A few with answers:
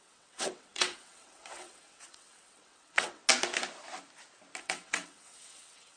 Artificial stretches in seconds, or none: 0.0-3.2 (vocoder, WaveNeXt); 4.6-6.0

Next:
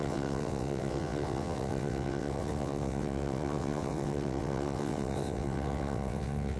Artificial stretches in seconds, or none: 0.0-6.6 (vocoder, WaveNeXt)

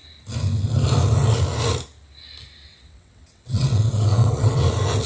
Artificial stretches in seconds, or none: 2.7-4.6 (vocoder, WaveNeXt)